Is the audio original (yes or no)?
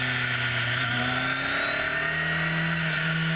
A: yes